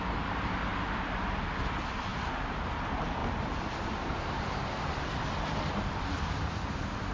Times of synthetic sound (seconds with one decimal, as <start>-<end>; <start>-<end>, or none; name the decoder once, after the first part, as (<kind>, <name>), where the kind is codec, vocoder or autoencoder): 2.1-2.7 (vocoder, BigVGAN v2); 3.2-5.9

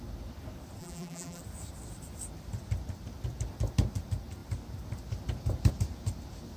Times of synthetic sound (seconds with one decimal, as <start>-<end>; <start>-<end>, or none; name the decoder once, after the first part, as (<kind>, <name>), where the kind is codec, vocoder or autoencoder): 0.8-1.4 (vocoder, BigVGAN v2)

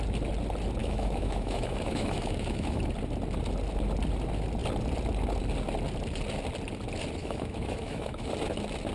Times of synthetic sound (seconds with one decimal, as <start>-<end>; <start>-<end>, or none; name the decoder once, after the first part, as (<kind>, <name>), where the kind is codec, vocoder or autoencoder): 0.8-2.8 (autoencoder, DAC-VAE); 7.2-8.3

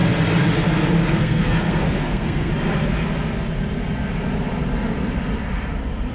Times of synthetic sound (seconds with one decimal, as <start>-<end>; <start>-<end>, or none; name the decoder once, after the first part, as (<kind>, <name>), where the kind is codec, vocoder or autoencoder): 1.1-2.5 (codec, SNAC)

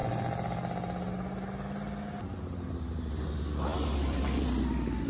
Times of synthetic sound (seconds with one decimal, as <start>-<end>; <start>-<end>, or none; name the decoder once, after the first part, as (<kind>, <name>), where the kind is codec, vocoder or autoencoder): 3.7-4.2 (vocoder, BigVGAN v2)

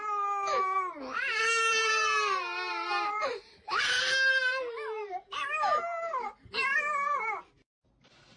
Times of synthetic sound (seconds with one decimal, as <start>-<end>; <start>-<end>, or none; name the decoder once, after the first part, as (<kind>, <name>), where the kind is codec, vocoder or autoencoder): 3.3-3.8 (vocoder, BigVGAN v2); 5.7-7.4